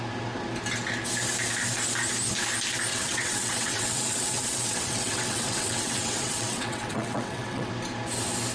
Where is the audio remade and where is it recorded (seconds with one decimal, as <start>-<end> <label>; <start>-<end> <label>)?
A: 0.0-2.9 recorded; 2.9-7.7 remade; 7.7-8.5 recorded